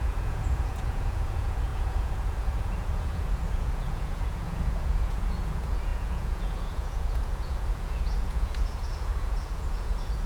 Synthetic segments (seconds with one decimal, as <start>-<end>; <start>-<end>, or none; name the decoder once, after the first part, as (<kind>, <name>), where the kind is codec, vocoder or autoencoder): 0.0-10.3 (vocoder, Vocos)